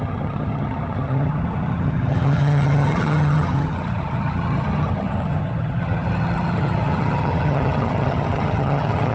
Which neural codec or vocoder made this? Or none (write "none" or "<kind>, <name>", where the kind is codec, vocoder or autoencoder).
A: vocoder, HiFi-GAN